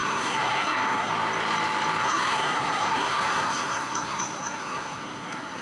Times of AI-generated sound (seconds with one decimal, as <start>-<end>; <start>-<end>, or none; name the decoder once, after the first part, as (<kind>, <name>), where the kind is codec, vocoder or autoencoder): 0.0-1.1 (codec, SNAC); 2.0-5.6